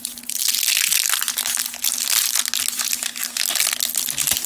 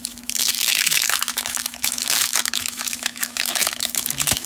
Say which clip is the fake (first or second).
second